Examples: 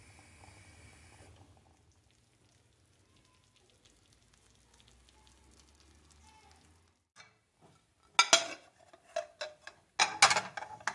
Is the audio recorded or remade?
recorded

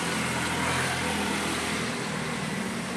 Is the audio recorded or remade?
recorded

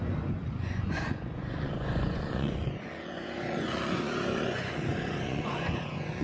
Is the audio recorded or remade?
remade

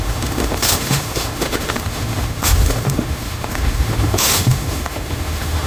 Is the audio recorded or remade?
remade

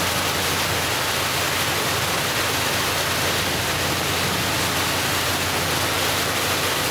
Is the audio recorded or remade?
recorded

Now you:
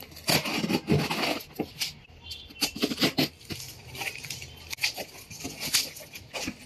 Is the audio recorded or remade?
recorded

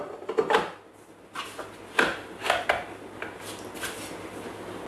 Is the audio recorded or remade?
recorded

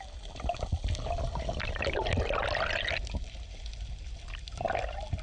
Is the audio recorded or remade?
recorded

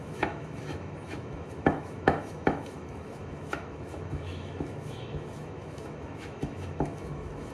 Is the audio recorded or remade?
remade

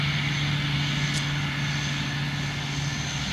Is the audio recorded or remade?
recorded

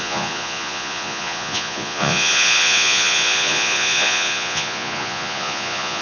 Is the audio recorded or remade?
remade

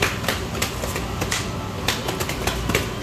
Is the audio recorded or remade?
recorded